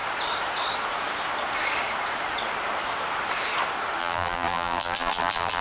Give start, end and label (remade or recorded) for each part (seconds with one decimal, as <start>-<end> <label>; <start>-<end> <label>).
0.0-4.0 recorded; 4.0-5.6 remade